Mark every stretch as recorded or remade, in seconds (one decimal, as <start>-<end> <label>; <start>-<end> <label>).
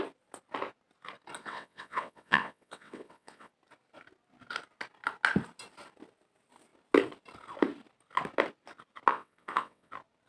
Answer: 0.0-1.4 recorded; 1.4-3.5 remade; 3.5-9.1 recorded; 9.1-9.9 remade; 9.9-10.3 recorded